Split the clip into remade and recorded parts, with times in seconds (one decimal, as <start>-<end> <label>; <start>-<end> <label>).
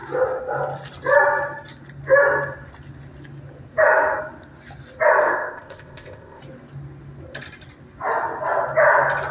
0.0-5.2 recorded; 5.2-6.4 remade; 6.4-9.3 recorded